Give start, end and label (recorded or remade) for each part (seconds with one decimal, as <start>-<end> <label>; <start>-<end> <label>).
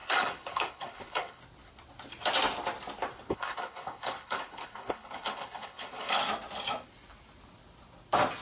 0.0-1.4 remade; 1.4-3.3 recorded; 3.3-6.2 remade; 6.2-8.4 recorded